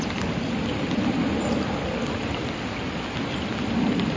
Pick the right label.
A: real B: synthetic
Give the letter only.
A